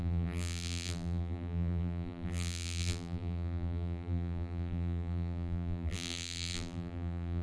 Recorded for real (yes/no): no